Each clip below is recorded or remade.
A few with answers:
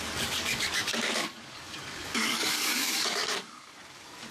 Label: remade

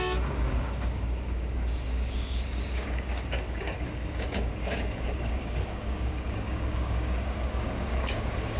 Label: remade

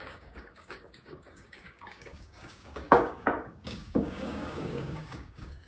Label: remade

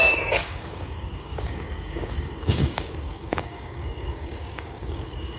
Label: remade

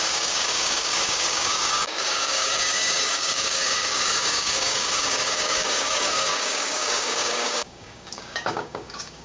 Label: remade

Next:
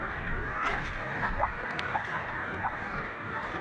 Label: remade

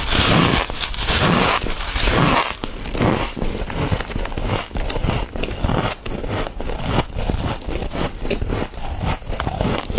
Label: recorded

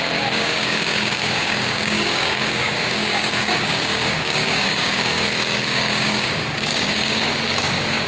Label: remade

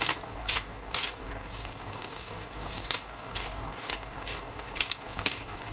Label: remade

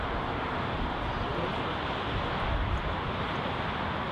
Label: recorded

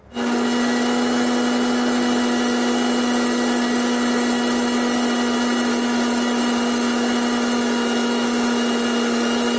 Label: recorded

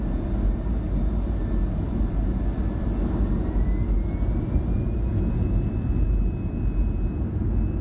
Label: recorded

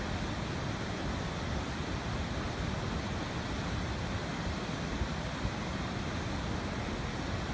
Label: recorded